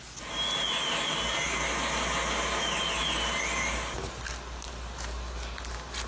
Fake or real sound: real